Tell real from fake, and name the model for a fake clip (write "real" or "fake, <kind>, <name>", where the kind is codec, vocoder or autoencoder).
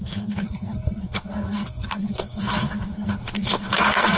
fake, codec, SNAC